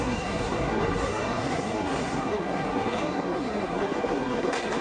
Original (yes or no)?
no